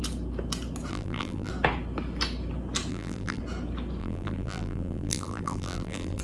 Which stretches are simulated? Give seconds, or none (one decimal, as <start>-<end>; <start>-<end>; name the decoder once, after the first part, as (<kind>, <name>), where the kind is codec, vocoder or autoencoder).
0.9-1.5 (vocoder, BigVGAN v2); 2.9-3.4; 4.0-6.2